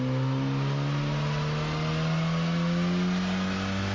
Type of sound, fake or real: real